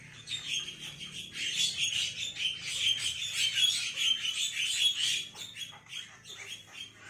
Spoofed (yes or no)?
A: no